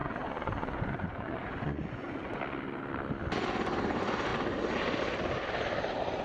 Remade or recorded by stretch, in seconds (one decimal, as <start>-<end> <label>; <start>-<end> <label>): 0.0-2.4 remade; 2.4-6.2 recorded